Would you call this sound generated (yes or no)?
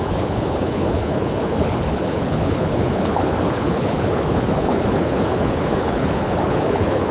yes